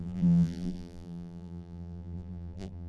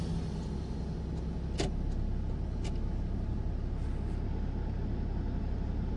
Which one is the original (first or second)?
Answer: second